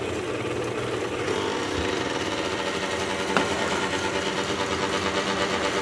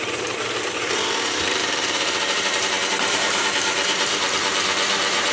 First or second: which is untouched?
first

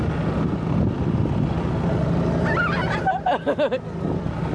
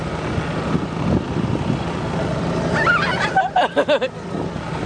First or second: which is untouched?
first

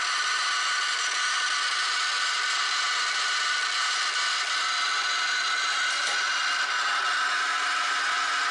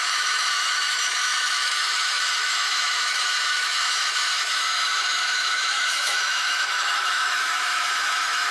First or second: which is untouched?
first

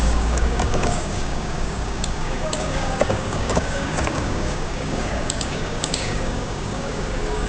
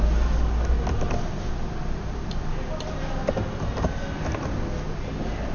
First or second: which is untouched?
second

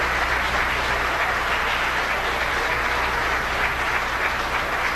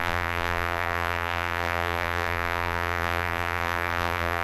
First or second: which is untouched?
first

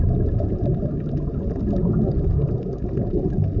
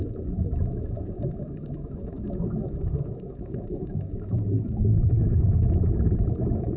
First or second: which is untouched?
first